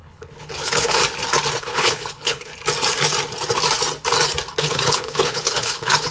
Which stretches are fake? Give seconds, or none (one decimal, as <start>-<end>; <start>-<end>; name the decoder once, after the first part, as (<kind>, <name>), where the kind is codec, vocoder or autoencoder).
0.0-1.0 (codec, HILCodec); 1.6-2.5; 4.6-6.1